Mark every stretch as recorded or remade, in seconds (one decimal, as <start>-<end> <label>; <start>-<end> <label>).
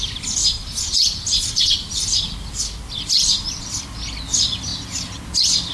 0.0-0.4 recorded; 0.4-3.8 remade; 3.8-5.7 recorded